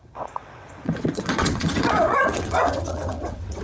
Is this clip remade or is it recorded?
remade